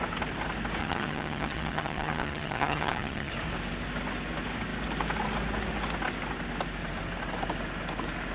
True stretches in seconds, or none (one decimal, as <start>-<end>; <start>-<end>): 0.0-0.8; 3.3-8.3